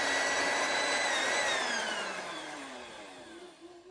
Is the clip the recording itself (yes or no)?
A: no